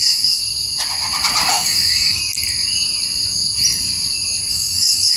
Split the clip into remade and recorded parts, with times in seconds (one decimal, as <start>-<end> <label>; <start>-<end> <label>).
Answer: 0.0-0.4 remade; 0.4-1.5 recorded; 1.5-2.2 remade; 2.2-4.5 recorded; 4.5-5.2 remade

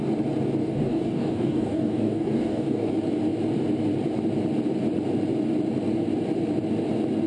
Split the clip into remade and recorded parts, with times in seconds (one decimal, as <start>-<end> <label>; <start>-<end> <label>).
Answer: 0.0-0.6 recorded; 0.6-2.9 remade; 2.9-7.3 recorded